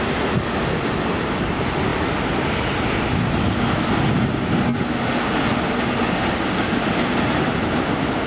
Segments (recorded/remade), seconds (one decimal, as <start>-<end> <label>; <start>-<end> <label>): 0.0-8.3 recorded